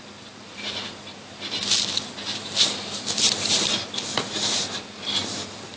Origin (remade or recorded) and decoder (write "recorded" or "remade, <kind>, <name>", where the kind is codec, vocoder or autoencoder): recorded